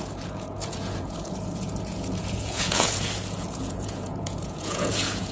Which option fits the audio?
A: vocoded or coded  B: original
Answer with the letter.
A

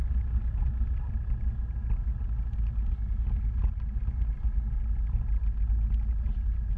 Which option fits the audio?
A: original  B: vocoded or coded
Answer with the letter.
A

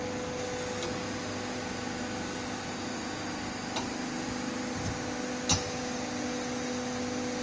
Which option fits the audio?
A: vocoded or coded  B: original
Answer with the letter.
B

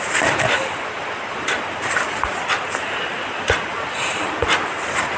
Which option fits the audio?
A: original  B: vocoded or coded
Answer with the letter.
B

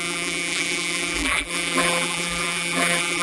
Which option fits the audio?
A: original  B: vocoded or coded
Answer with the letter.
B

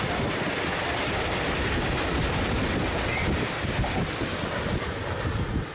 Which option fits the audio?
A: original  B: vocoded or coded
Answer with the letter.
A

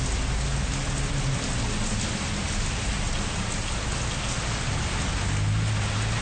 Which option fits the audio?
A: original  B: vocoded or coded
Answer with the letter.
A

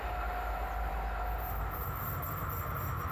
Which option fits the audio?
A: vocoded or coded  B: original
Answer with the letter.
B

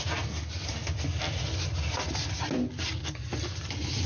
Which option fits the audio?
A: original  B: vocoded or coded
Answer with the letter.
A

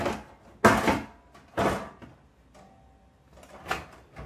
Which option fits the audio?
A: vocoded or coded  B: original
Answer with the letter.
B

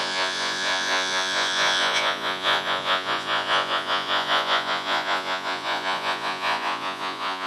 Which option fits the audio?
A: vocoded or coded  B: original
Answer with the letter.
A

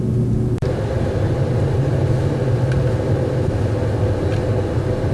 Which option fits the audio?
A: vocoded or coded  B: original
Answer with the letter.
B